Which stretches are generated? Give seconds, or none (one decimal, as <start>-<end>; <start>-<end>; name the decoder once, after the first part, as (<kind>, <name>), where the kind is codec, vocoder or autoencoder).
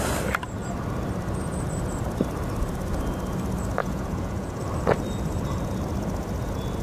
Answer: 3.8-4.6 (vocoder, Vocos)